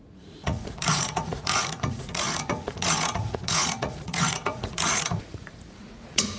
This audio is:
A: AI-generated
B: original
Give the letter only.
A